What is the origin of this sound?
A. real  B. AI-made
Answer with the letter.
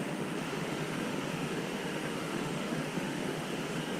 B